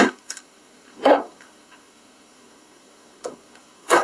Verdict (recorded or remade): remade